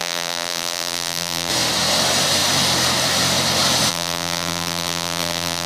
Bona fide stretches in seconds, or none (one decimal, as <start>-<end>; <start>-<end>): 1.5-3.9